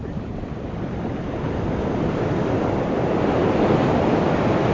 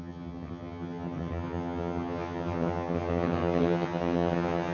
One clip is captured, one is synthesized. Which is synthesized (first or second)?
second